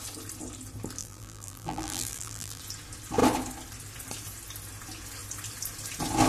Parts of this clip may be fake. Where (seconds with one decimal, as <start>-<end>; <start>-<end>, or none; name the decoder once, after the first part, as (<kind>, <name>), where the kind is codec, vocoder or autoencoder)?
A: 1.0-2.6 (vocoder, BigVGAN v2)